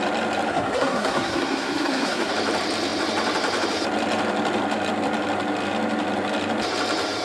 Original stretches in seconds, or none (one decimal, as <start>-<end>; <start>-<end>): 0.0-0.5; 2.3-7.2